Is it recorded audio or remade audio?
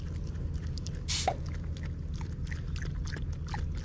recorded